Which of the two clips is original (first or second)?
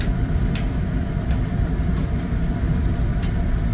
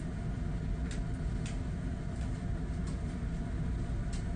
second